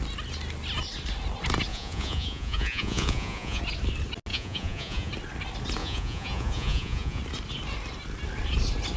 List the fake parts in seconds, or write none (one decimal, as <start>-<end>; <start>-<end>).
1.7-3.6; 4.3-5.1; 5.8-7.2